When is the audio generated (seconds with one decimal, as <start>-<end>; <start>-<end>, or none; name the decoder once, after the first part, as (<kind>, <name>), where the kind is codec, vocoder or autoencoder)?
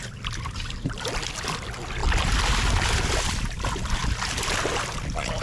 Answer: 0.0-2.0 (vocoder, BigVGAN v2); 3.6-4.0